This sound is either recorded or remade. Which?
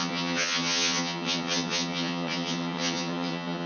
remade